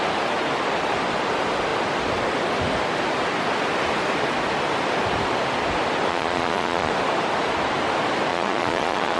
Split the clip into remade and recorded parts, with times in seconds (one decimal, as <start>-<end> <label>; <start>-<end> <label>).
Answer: 0.0-6.1 recorded; 6.1-6.9 remade; 6.9-8.3 recorded; 8.3-9.2 remade

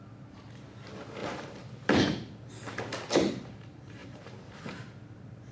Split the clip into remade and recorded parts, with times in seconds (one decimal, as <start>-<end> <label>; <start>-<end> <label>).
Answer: 0.0-1.2 recorded; 1.2-2.5 remade; 2.5-4.0 recorded; 4.0-5.0 remade; 5.0-5.5 recorded

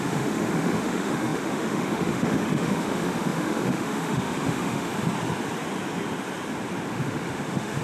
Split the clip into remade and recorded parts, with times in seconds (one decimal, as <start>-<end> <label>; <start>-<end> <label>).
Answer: 0.0-4.9 remade; 4.9-6.9 recorded; 6.9-7.8 remade

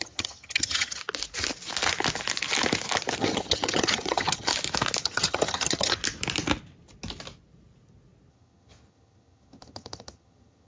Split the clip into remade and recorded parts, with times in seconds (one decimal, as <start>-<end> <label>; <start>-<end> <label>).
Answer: 0.0-1.0 remade; 1.0-3.2 recorded; 3.2-4.5 remade; 4.5-5.0 recorded; 5.0-6.0 remade; 6.0-8.3 recorded; 8.3-10.7 remade

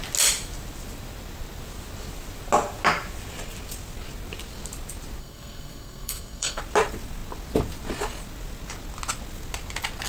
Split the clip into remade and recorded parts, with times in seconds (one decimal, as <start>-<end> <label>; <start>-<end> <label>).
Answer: 0.0-5.2 recorded; 5.2-6.6 remade; 6.6-10.1 recorded

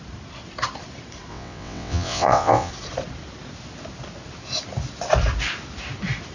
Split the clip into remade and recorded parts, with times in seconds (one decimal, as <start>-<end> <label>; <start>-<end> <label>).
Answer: 0.0-1.3 recorded; 1.3-2.7 remade; 2.7-6.3 recorded

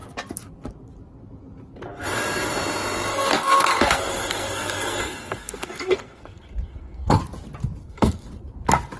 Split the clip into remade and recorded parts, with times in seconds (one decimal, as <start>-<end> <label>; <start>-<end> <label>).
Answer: 0.0-3.1 recorded; 3.1-7.2 remade; 7.2-7.8 recorded; 7.8-8.3 remade; 8.3-9.0 recorded